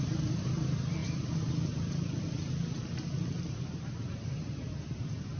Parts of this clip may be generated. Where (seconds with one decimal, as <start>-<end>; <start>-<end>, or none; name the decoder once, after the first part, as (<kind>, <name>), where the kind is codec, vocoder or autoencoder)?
0.0-5.4 (vocoder, BigVGAN v2)